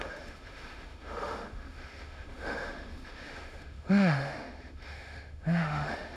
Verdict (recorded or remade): remade